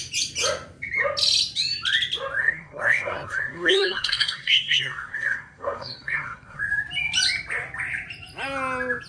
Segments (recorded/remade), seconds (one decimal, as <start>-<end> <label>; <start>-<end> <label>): 0.0-2.4 recorded; 2.4-6.6 remade; 6.6-9.1 recorded